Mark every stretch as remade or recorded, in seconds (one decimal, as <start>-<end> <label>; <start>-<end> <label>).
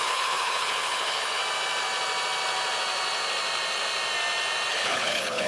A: 0.0-1.4 remade; 1.4-4.7 recorded; 4.7-5.5 remade